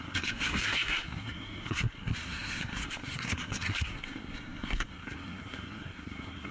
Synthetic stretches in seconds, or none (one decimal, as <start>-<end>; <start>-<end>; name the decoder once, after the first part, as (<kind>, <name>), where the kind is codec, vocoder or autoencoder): 0.0-6.5 (codec, SNAC)

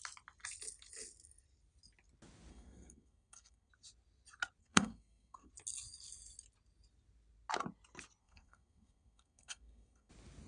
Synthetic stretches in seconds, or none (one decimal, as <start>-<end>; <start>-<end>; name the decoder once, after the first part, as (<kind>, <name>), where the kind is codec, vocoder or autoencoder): 2.5-3.7 (codec, SNAC); 4.6-5.5; 8.2-10.1